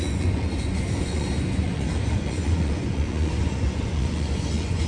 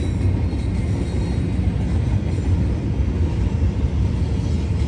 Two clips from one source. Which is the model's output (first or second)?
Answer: first